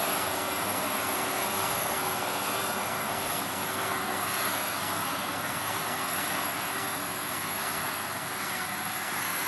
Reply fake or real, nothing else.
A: fake